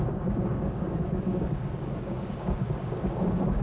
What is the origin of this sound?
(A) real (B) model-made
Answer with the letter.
B